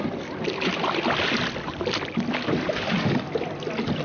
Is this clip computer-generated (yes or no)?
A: no